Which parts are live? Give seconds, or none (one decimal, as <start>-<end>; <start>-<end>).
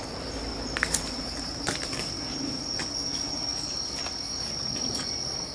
0.0-0.5; 2.5-5.5